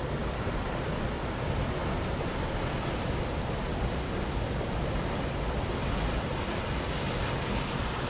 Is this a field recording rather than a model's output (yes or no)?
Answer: yes